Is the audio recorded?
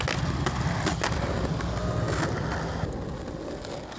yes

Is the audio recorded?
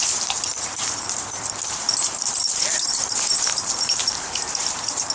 no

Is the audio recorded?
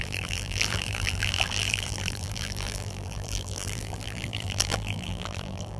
no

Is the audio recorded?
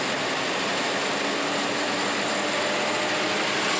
yes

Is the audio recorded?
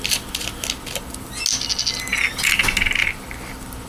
yes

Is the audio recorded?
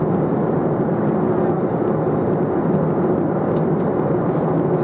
yes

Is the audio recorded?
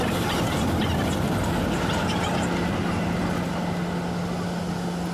yes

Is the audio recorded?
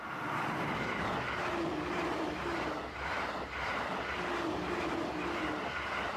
yes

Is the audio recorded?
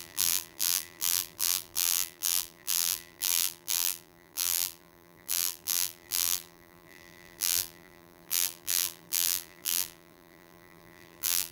no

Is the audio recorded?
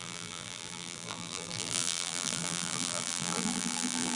no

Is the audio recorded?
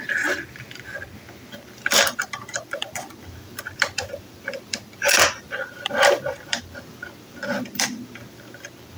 no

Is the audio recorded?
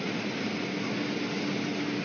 yes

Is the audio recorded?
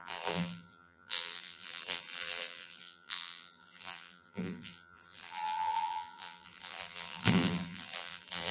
no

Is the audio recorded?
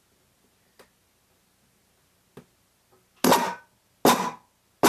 yes